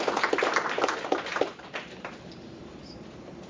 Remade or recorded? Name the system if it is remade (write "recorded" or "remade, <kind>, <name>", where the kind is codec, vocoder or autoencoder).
remade, vocoder, BigVGAN v2